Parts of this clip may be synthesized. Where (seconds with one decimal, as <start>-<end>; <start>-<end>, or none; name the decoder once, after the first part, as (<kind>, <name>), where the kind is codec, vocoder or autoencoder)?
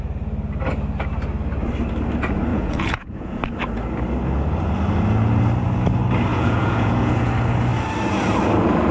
2.5-3.4 (vocoder, Vocos); 6.3-7.3